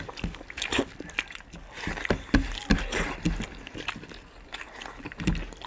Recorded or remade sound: recorded